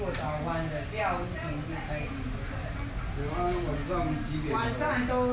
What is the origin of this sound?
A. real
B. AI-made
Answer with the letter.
A